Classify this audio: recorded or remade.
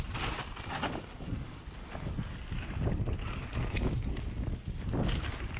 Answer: recorded